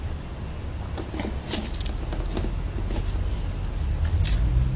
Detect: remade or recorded recorded